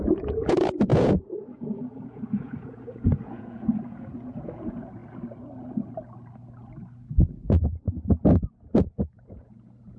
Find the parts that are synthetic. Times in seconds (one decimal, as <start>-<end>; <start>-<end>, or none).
0.0-5.0; 8.9-10.0